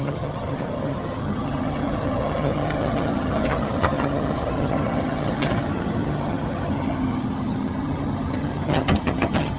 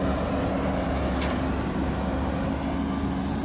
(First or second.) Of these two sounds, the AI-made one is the first